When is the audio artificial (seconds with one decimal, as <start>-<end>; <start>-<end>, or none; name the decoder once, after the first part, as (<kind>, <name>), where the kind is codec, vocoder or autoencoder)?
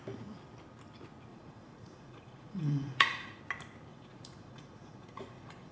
1.3-3.4 (vocoder, Vocos); 3.9-5.7